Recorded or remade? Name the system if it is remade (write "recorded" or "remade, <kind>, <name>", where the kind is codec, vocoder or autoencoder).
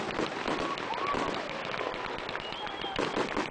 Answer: recorded